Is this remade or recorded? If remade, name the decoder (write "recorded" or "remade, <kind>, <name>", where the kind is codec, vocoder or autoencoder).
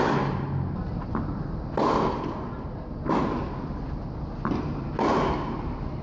recorded